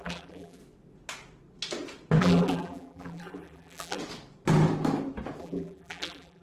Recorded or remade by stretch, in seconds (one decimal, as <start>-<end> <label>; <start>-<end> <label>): 0.0-0.6 remade; 0.6-2.2 recorded; 2.2-4.0 remade; 4.0-5.4 recorded; 5.4-6.4 remade